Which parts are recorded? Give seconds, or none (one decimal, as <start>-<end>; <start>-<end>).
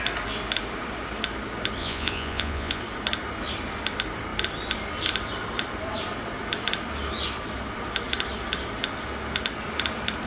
0.0-1.8; 2.8-10.3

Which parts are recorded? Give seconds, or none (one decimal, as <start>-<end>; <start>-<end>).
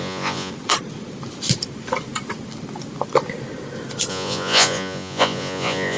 0.5-4.1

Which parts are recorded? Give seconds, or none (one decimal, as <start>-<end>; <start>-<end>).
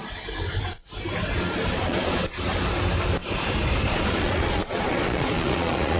0.0-1.7; 2.2-3.9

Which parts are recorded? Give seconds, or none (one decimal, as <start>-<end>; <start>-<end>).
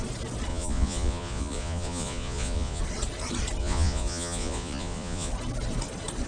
0.0-0.5; 2.8-3.6; 5.3-6.3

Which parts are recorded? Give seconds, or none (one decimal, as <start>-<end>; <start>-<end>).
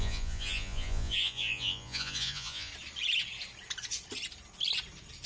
2.7-5.3